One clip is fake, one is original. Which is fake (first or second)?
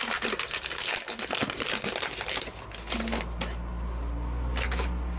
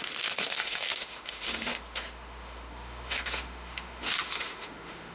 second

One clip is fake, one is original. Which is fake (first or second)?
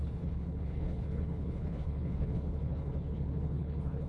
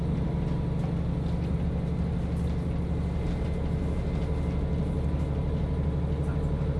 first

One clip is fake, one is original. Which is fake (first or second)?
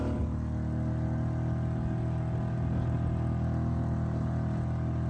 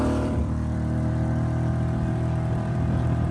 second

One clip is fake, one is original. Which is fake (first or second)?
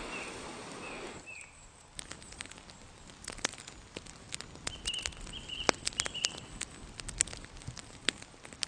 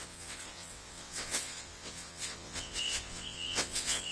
second